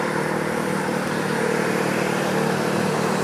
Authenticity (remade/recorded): recorded